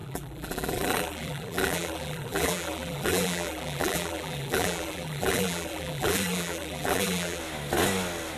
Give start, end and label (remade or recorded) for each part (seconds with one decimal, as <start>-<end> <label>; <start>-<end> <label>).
0.0-7.4 remade; 7.4-8.4 recorded